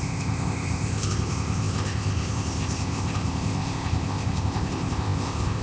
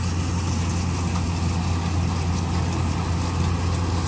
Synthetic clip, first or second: first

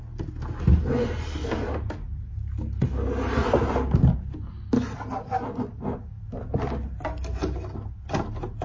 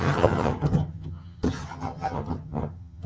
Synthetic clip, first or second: second